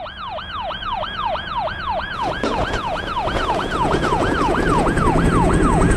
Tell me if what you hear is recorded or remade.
remade